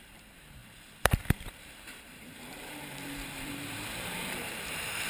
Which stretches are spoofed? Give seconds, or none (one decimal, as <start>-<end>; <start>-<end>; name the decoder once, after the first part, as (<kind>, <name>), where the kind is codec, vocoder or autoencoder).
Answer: 0.0-5.1 (vocoder, BigVGAN v2)